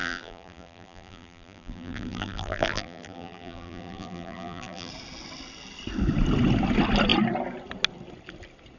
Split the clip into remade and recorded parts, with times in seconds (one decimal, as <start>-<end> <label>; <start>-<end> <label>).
0.0-4.9 remade; 4.9-8.8 recorded